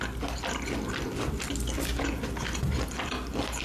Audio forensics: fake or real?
real